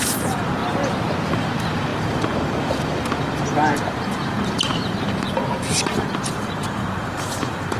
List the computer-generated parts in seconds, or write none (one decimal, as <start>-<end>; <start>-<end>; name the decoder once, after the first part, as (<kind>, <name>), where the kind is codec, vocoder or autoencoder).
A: 0.0-0.6 (vocoder, BigVGAN v2); 1.3-7.8